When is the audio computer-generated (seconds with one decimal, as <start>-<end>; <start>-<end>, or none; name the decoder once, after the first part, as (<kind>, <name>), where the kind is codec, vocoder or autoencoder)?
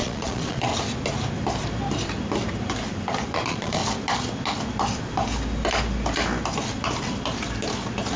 0.0-0.7 (vocoder, Vocos); 3.3-3.8